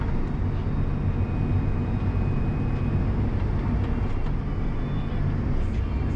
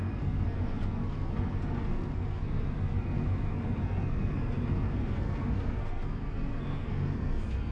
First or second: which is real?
first